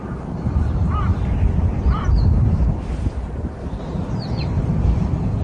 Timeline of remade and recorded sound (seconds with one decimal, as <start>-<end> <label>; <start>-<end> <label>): 0.0-5.4 remade